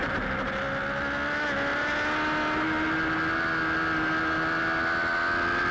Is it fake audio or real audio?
real